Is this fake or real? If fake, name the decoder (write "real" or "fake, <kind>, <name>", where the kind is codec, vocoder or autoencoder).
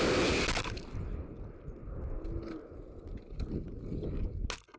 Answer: real